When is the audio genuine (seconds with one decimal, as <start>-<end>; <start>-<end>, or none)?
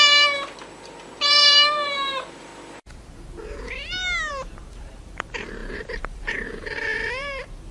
2.5-4.3